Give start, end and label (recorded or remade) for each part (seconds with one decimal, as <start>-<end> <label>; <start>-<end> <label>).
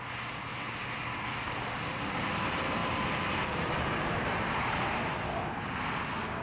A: 0.0-2.8 recorded; 2.8-4.8 remade; 4.8-6.4 recorded